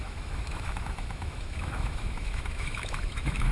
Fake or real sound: fake